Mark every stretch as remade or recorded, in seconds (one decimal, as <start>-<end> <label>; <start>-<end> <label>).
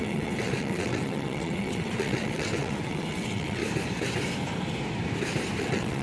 0.0-3.6 remade; 3.6-5.6 recorded; 5.6-6.0 remade